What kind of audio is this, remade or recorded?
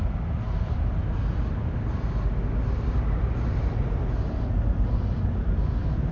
recorded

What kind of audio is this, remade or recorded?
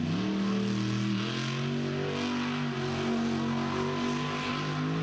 recorded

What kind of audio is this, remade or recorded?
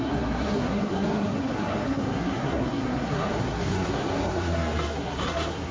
remade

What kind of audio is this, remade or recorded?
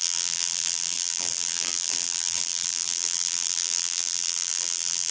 remade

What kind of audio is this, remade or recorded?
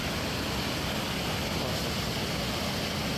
recorded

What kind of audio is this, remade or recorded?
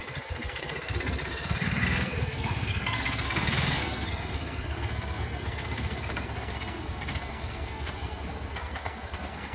remade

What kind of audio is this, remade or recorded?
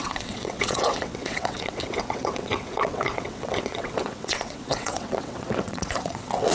remade